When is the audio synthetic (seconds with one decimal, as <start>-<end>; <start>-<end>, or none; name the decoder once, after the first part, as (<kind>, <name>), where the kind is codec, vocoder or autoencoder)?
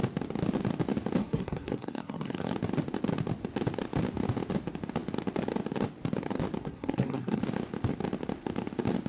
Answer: 1.2-2.5 (codec, SNAC); 6.6-7.4